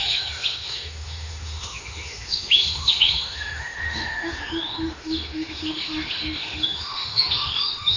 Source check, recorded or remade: remade